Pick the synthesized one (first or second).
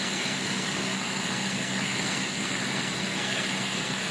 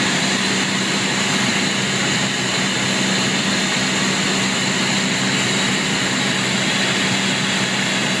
first